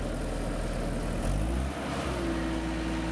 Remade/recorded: recorded